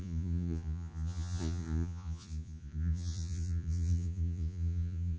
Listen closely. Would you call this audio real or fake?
fake